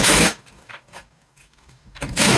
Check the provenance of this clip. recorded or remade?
remade